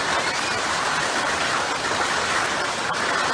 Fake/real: real